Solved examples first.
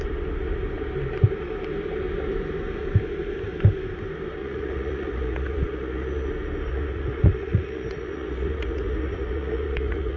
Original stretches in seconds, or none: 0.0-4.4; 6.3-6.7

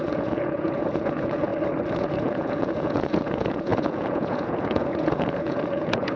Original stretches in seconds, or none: 1.5-2.0